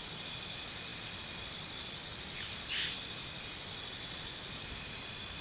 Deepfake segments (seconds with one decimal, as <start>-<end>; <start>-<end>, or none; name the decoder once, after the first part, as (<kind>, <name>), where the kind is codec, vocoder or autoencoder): none